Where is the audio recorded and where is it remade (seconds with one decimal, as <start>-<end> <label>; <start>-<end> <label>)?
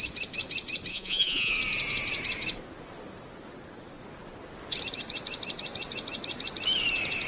0.0-0.9 recorded; 0.9-1.5 remade; 1.5-7.3 recorded